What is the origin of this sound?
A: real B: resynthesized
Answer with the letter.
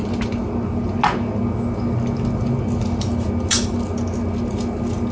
A